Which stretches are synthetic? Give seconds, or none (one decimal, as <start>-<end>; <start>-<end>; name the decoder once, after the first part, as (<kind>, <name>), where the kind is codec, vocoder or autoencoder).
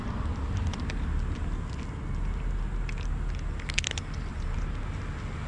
4.3-4.8 (vocoder, BigVGAN v2)